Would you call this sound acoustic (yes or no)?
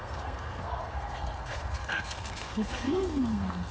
no